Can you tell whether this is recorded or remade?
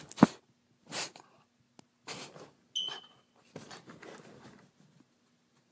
recorded